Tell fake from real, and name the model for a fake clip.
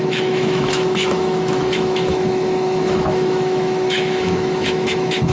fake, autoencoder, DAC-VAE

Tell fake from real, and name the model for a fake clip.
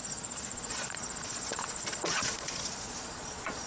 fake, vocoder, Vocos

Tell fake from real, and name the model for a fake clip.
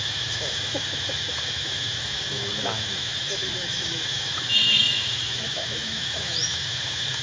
fake, autoencoder, DAC-VAE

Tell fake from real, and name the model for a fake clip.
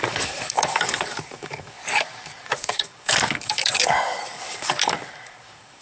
fake, codec, DAC